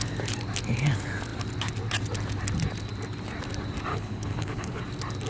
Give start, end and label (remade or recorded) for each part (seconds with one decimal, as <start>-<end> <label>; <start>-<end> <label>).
0.0-3.9 recorded; 3.9-4.8 remade; 4.8-5.3 recorded